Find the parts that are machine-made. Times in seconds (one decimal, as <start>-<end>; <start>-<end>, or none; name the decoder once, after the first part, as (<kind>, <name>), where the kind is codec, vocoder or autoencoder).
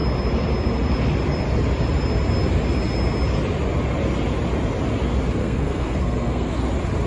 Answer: 5.4-6.5 (codec, SNAC)